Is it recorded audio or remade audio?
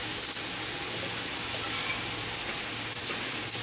recorded